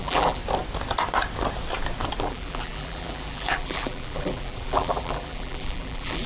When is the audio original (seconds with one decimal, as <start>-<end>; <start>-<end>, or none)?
0.4-2.2